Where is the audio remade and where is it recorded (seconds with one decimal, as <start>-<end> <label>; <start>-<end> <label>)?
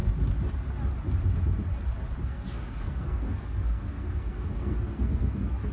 0.0-2.2 recorded; 2.2-5.7 remade